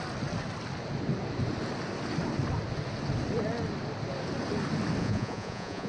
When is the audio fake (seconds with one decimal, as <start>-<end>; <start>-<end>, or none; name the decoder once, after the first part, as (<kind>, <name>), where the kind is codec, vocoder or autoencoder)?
5.0-5.9 (vocoder, Vocos)